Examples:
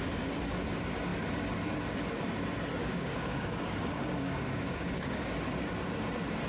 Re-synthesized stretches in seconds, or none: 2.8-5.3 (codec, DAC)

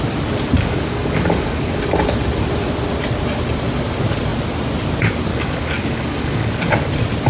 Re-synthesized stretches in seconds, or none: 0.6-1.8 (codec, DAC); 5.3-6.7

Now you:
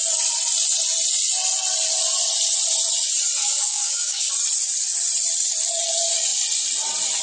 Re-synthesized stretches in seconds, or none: 3.4-4.3 (codec, DAC)

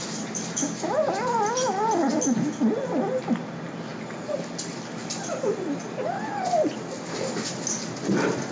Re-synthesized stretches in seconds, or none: none